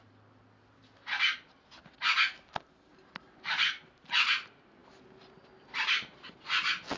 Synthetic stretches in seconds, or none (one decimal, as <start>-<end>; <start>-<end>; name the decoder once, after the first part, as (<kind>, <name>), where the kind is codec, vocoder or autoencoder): none